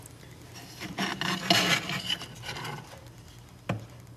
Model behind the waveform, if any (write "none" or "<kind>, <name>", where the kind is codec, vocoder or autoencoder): none